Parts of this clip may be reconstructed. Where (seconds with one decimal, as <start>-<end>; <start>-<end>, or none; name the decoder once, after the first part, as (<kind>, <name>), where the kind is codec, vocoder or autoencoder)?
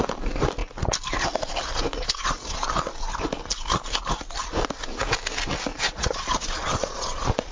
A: 2.0-2.6 (vocoder, Vocos); 5.7-7.5